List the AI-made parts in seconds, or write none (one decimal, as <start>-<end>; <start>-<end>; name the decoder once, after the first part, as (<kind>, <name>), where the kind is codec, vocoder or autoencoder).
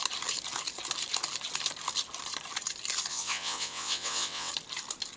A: 3.1-4.5 (vocoder, WaveNeXt)